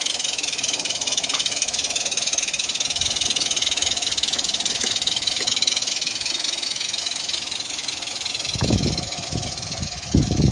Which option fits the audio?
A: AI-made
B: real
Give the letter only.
A